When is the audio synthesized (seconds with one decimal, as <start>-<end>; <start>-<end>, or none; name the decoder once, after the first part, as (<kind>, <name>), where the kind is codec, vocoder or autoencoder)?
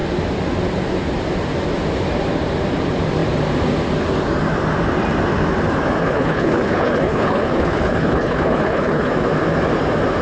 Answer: 6.0-9.1 (codec, HILCodec)